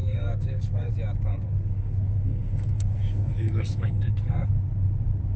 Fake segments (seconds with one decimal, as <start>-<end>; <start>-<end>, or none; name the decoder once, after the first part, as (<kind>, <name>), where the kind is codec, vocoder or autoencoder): 0.0-0.9 (codec, SNAC); 1.3-4.5